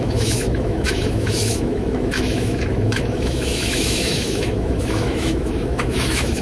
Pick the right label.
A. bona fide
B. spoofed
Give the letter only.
B